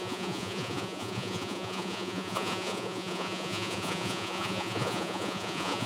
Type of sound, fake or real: fake